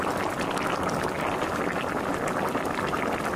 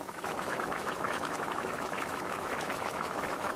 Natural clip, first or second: first